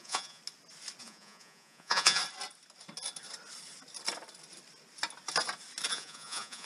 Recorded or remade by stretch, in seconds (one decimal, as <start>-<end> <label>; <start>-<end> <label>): 0.0-0.4 remade; 0.4-1.0 recorded; 1.0-2.2 remade; 2.2-5.9 recorded; 5.9-6.7 remade